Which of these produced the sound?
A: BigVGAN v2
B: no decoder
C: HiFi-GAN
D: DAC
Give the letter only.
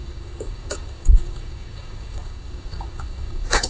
D